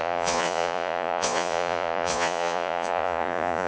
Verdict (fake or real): fake